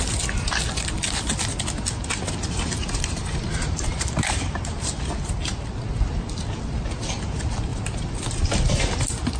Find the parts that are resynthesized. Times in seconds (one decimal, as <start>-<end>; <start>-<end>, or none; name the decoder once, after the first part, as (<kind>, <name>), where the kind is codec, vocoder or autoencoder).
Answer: 2.8-4.8 (vocoder, BigVGAN v2)